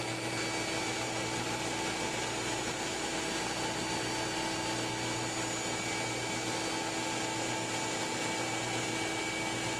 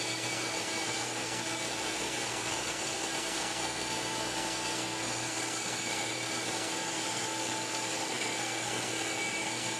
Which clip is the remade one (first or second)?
second